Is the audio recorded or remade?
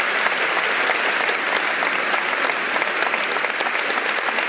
recorded